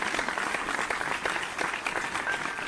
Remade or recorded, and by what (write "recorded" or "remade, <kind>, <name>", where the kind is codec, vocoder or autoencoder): recorded